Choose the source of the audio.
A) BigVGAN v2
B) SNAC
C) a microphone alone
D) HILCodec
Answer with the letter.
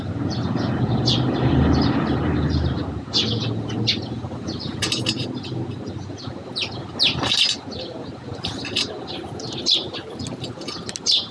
C